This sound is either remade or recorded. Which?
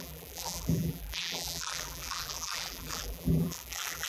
remade